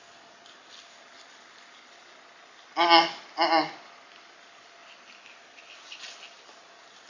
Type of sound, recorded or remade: recorded